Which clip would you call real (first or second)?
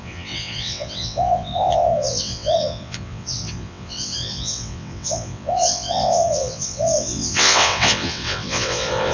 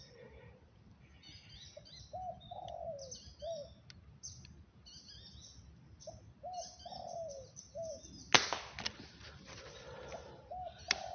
second